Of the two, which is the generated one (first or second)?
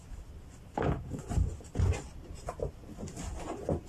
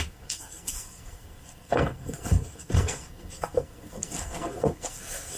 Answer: second